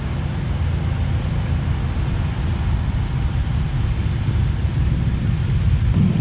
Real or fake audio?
real